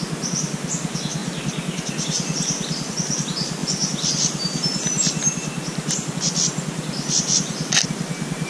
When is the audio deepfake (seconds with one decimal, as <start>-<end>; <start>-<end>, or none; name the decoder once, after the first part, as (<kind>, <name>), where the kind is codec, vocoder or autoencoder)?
none